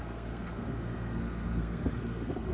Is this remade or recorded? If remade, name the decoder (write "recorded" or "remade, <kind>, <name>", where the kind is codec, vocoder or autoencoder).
remade, codec, SNAC